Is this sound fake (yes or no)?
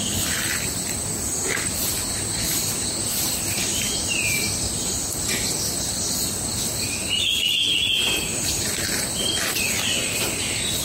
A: no